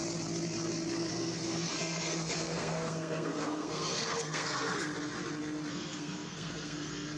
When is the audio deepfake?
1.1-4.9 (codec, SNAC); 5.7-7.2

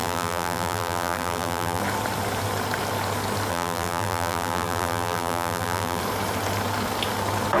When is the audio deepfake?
0.0-1.8 (vocoder, BigVGAN v2); 3.5-6.0

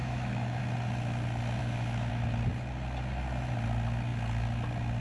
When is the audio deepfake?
0.0-0.6 (autoencoder, DAC-VAE); 1.6-2.1

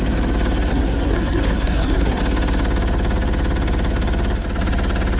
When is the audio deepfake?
0.7-2.2 (codec, SNAC)

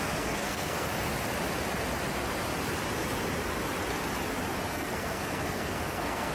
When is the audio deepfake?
0.0-0.9 (codec, SNAC); 4.7-6.3

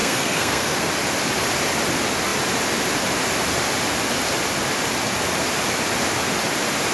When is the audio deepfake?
0.0-0.9 (codec, SNAC)